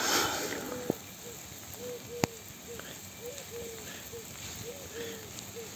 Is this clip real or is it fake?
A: real